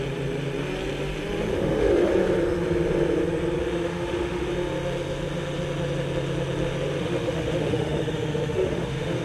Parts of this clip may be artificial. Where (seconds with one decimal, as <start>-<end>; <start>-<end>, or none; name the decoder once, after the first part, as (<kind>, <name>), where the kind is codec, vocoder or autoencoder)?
1.5-2.1 (autoencoder, DAC-VAE); 3.6-4.5; 7.0-9.2